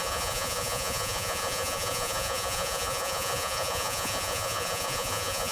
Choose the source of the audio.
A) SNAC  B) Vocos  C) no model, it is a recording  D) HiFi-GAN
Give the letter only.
B